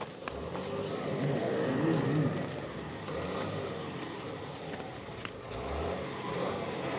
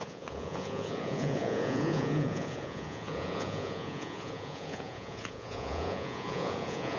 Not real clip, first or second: second